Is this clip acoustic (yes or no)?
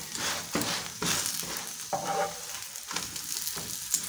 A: yes